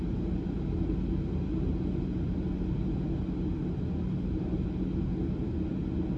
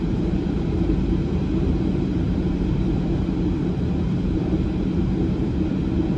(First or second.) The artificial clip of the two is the second